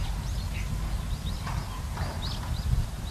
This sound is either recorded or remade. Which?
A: recorded